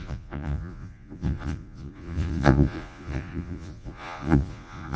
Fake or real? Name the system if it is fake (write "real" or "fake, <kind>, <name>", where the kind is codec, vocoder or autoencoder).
fake, vocoder, Vocos